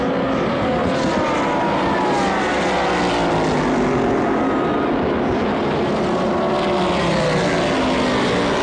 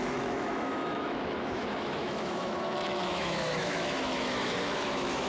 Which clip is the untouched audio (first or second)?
first